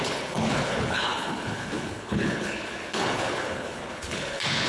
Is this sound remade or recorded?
remade